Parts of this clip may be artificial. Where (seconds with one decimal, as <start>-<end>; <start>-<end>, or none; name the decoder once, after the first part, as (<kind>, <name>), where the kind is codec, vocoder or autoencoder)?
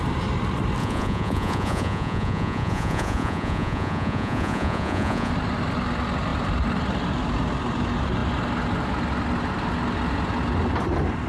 0.8-5.3 (vocoder, Vocos)